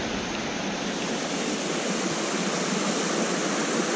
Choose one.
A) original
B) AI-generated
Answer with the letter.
A